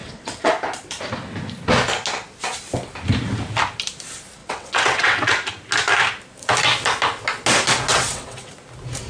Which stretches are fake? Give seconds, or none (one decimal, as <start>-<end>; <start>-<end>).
0.0-0.5; 4.4-5.2; 7.9-8.5